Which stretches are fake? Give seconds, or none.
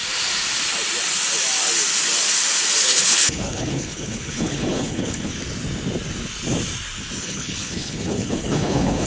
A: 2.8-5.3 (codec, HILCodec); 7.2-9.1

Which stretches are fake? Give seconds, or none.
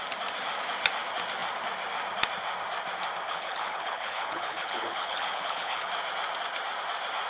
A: 3.3-5.9 (codec, HILCodec)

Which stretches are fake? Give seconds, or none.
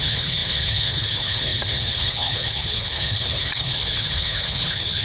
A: 0.0-5.0 (codec, HILCodec)